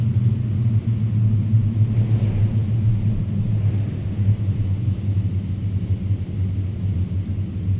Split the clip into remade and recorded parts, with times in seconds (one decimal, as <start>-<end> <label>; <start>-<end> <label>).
0.0-7.8 recorded